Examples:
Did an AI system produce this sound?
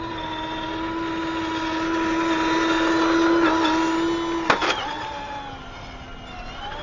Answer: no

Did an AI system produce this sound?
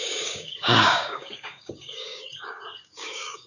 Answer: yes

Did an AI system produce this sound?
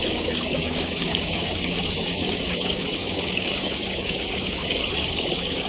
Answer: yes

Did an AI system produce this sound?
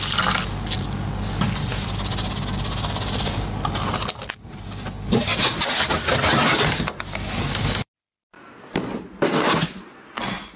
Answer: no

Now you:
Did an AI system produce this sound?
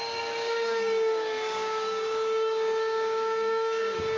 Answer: yes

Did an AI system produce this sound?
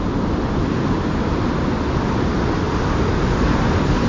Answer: no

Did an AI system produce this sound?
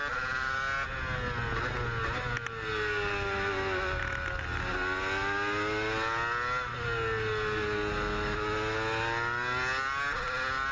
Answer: no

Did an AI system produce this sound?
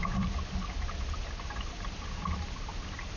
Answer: no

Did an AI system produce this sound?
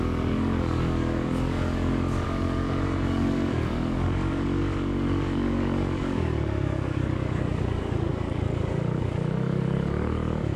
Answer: yes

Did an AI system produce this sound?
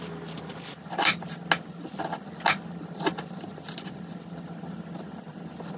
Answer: no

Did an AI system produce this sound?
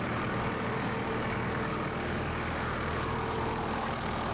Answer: yes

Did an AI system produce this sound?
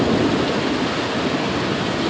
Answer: no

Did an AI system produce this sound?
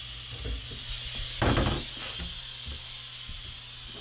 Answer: no